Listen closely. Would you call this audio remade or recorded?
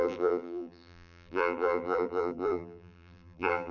remade